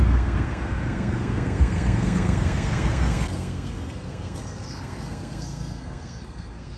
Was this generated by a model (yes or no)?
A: yes